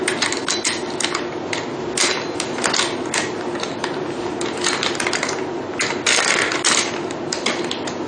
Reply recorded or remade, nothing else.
recorded